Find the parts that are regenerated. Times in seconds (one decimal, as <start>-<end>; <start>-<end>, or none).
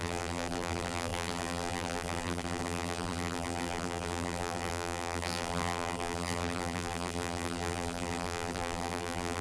0.0-9.4